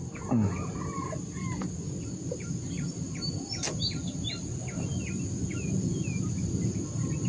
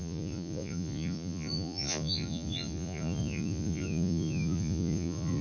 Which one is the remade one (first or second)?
second